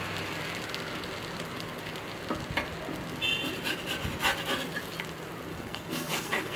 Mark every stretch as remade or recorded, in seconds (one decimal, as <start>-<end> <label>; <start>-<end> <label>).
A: 0.0-5.5 recorded; 5.5-6.6 remade